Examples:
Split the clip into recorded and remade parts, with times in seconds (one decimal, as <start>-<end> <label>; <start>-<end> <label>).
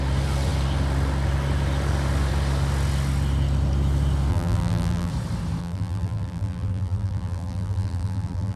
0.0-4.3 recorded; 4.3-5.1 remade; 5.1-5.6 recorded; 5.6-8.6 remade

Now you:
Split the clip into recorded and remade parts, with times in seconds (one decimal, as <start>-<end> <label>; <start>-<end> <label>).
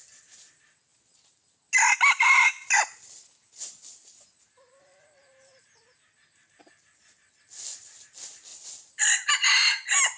0.0-10.2 recorded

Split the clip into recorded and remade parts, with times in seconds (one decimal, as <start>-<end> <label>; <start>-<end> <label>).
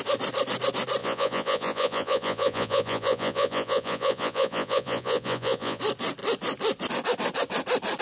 0.0-1.0 recorded; 1.0-5.8 remade; 5.8-8.0 recorded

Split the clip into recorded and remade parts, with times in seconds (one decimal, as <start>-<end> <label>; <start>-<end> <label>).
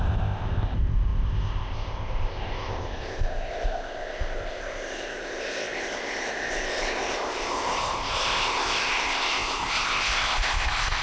0.0-11.0 remade